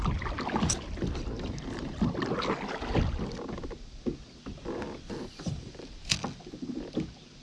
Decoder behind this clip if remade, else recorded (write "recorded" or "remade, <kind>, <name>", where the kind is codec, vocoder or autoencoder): recorded